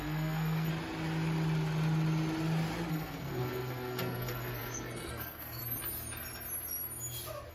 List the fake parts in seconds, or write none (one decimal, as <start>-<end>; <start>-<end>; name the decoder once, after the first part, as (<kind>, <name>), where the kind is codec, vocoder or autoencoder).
0.0-0.7 (codec, SNAC); 2.9-5.6